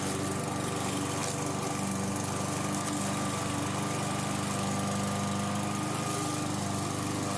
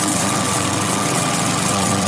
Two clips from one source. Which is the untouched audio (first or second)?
first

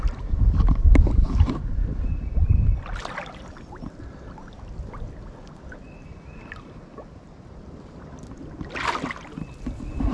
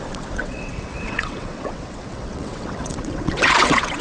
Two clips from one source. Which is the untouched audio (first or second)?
first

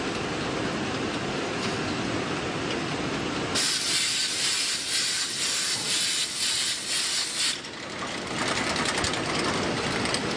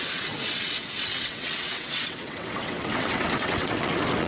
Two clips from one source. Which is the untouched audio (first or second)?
first